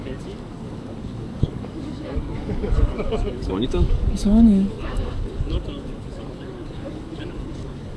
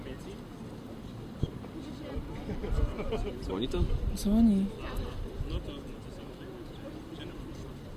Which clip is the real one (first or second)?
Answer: second